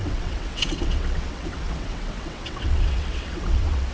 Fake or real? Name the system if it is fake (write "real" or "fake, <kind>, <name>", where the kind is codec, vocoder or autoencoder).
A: fake, vocoder, WaveNeXt